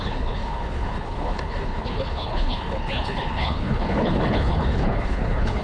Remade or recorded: remade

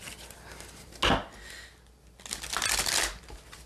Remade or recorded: recorded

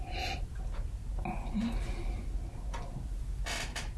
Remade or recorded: recorded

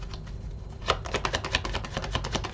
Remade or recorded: recorded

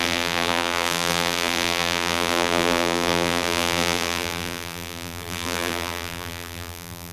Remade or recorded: remade